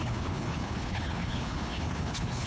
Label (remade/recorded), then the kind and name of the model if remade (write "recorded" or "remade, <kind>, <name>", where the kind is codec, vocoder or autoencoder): remade, codec, HILCodec